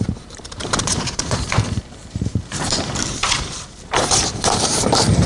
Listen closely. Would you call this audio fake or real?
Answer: fake